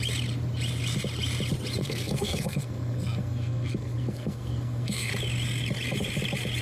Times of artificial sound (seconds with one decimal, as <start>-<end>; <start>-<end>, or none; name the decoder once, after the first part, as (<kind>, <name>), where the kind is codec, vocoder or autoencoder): 1.8-5.1 (codec, SNAC)

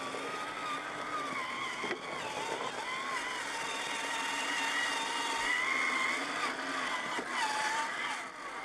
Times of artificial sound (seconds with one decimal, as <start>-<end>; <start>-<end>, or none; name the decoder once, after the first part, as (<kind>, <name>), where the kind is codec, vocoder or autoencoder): none

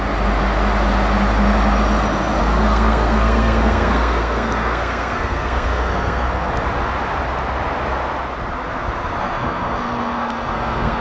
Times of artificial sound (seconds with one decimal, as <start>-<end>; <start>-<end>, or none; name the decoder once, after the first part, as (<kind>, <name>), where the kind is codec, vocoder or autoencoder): 2.4-6.5 (codec, SNAC); 9.2-11.0

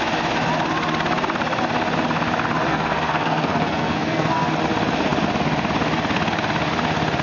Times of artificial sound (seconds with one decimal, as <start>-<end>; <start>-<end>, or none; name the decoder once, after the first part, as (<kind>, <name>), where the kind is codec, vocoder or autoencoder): 2.7-4.5 (codec, SNAC)

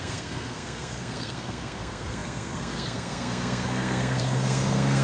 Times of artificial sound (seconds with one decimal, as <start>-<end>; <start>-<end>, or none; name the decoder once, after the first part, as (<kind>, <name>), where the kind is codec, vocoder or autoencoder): 0.0-5.0 (codec, SNAC)

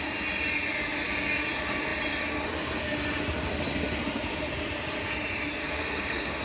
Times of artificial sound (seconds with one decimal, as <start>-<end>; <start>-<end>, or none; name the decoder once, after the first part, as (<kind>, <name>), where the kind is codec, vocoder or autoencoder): 5.6-6.4 (codec, SNAC)

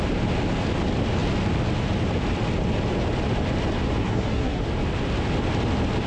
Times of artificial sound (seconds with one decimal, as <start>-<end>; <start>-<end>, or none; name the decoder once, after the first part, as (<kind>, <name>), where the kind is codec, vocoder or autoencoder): 4.0-4.6 (codec, SNAC)

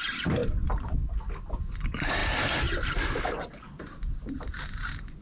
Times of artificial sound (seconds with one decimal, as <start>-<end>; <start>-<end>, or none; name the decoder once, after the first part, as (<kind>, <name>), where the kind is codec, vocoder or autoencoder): none